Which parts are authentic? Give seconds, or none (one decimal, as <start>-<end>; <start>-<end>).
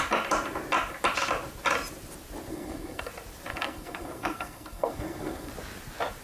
0.0-2.5; 3.1-3.5; 5.5-6.2